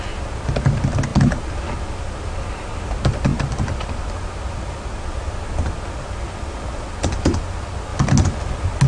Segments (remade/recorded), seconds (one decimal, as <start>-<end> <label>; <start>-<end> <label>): 0.0-8.9 recorded